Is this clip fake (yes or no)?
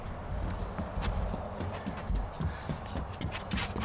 no